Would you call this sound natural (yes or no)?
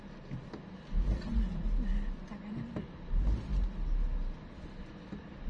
yes